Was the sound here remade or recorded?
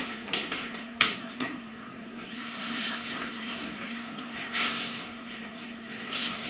remade